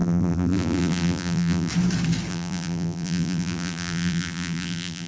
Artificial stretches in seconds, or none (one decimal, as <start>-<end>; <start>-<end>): 0.0-1.7; 2.3-5.1